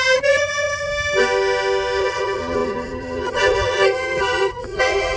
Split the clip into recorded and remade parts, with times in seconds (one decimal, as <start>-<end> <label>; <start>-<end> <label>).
0.0-0.9 remade; 0.9-2.0 recorded; 2.0-5.2 remade